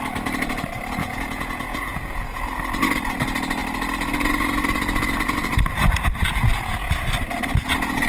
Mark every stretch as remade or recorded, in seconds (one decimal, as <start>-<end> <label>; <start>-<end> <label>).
0.0-1.0 recorded; 1.0-2.4 remade; 2.4-8.1 recorded